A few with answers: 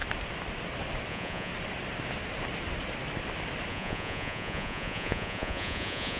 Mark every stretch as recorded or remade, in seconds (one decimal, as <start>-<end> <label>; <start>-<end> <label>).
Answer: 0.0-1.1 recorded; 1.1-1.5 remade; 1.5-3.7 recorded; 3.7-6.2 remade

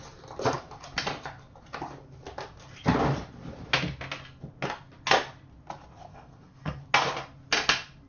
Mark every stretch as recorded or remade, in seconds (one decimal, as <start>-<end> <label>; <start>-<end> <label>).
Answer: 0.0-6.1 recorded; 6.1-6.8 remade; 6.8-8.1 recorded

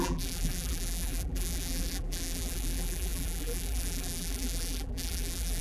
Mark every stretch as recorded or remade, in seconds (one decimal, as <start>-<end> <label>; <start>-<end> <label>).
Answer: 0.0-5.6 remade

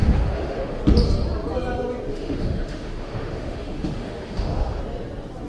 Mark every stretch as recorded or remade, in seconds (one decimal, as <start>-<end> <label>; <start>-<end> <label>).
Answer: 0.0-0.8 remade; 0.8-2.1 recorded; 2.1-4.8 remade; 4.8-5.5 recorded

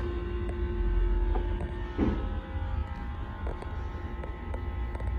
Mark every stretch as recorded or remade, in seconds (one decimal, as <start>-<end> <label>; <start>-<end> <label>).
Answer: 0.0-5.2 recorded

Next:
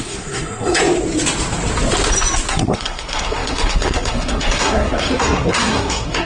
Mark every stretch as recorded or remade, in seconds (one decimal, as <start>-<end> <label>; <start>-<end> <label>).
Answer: 0.0-0.8 remade; 0.8-2.5 recorded; 2.5-6.3 remade

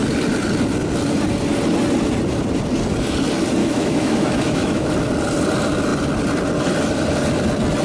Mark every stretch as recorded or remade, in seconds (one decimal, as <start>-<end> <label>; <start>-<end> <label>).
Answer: 0.0-3.6 recorded; 3.6-4.9 remade; 4.9-7.8 recorded